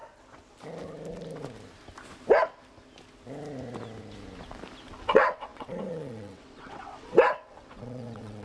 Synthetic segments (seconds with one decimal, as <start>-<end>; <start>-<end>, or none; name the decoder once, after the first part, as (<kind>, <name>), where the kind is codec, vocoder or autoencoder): 5.0-8.4 (vocoder, WaveNeXt)